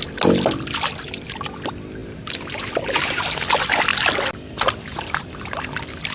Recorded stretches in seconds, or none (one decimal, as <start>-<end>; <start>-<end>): 0.0-2.0; 3.2-4.9; 5.5-6.1